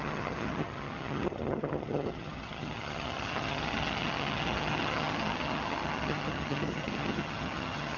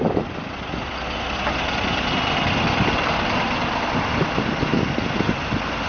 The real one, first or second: second